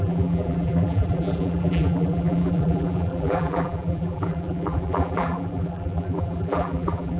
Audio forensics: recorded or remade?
remade